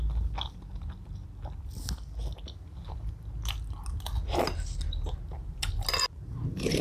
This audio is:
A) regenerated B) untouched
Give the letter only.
B